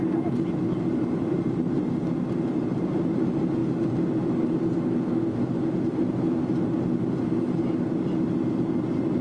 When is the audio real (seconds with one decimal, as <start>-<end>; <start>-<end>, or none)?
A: 0.0-9.2